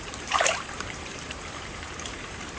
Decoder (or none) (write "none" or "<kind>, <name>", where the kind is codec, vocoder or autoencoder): vocoder, BigVGAN v2